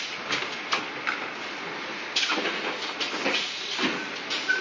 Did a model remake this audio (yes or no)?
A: no